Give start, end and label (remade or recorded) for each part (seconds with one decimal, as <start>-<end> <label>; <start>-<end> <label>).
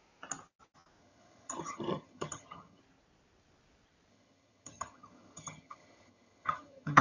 0.0-1.0 recorded; 1.0-2.8 remade; 2.8-4.1 recorded; 4.1-7.0 remade